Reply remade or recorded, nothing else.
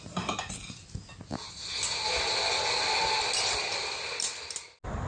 recorded